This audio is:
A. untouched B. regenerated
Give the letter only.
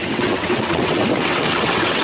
B